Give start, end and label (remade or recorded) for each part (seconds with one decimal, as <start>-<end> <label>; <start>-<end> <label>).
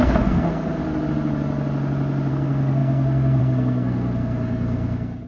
0.0-0.8 remade; 0.8-2.3 recorded; 2.3-5.3 remade